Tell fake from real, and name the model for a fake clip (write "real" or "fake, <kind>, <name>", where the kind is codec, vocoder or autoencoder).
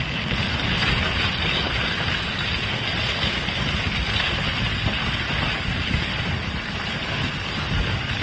real